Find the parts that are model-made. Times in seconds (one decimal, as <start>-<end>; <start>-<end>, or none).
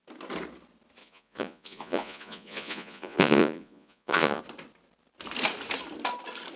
1.0-4.4